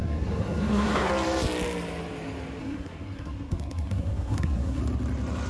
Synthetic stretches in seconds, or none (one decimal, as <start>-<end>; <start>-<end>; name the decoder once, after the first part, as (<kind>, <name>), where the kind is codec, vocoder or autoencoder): 0.0-1.1 (codec, SNAC); 2.6-4.8